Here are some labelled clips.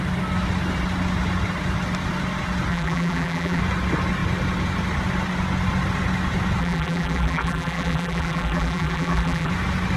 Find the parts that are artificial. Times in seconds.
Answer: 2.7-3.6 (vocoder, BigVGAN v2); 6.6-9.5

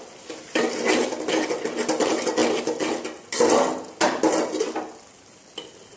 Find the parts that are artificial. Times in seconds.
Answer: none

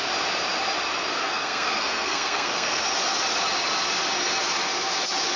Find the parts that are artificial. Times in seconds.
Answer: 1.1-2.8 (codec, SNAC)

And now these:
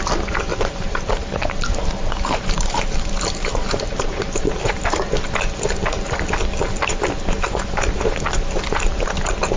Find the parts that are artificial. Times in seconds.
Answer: 0.5-4.5 (vocoder, BigVGAN v2)

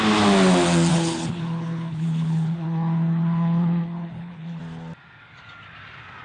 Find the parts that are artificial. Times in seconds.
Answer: 0.9-4.6 (codec, HILCodec)

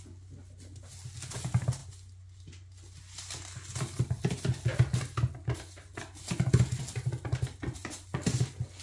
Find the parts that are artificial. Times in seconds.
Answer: none

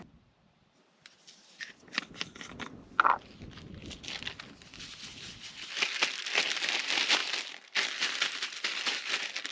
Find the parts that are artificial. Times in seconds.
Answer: none